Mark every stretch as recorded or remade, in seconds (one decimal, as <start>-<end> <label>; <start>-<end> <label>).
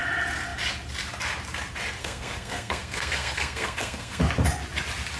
0.0-2.0 recorded; 2.0-4.2 remade; 4.2-5.2 recorded